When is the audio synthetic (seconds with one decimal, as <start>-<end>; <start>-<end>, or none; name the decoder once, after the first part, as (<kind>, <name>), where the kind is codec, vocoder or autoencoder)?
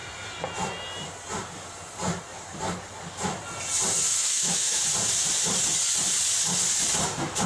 4.1-4.8 (autoencoder, DAC-VAE)